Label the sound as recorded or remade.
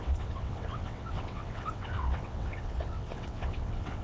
remade